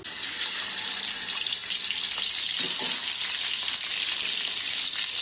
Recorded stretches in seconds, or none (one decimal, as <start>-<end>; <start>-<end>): 0.0-5.2